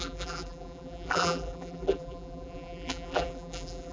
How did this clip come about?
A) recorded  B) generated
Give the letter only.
B